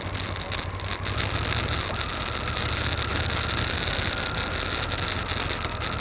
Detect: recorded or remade recorded